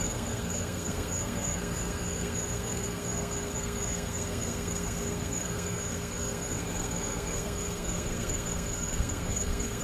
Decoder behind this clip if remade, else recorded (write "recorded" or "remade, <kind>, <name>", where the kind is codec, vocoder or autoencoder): remade, codec, SNAC